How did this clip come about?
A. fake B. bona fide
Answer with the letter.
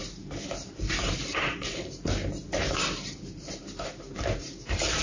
A